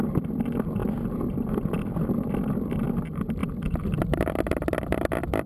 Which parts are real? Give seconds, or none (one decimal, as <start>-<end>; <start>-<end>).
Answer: 0.0-5.5